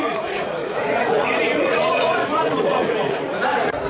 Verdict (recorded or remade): remade